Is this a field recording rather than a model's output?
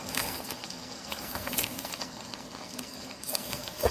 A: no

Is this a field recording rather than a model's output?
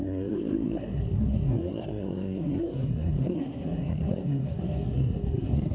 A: no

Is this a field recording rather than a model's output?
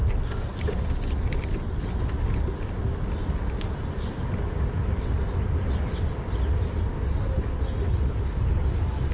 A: yes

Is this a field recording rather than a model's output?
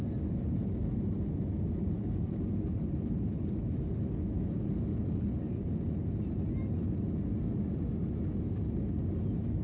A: yes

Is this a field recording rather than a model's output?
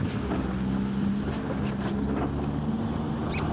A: yes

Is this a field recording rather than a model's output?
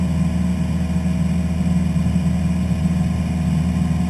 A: yes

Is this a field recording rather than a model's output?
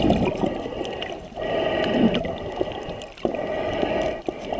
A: yes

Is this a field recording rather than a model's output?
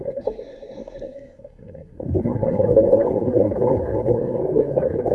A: no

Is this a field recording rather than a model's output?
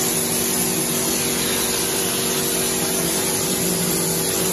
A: yes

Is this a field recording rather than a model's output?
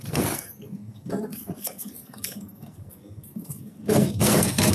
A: no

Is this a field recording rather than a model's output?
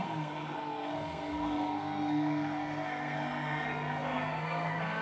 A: no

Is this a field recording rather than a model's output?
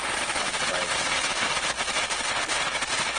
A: yes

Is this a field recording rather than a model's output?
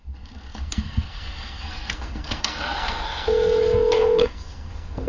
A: no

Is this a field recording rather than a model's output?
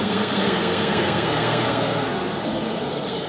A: no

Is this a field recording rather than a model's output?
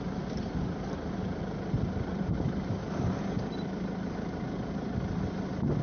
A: yes